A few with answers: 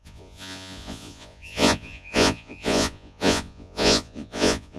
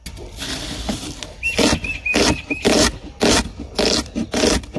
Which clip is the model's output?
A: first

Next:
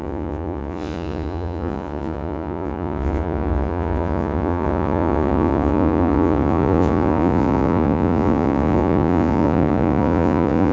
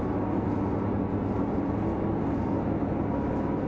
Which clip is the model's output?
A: first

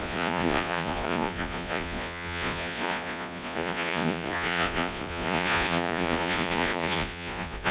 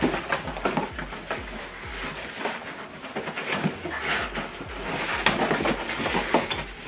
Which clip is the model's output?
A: first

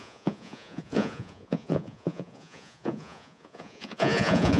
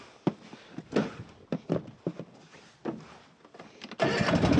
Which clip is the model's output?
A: first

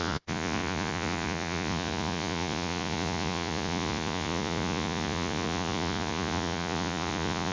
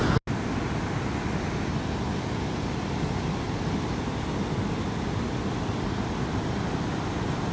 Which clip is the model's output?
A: first